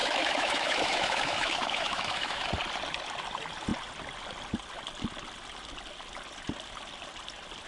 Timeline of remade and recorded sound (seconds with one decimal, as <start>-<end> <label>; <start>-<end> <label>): 0.0-2.5 remade; 2.5-7.7 recorded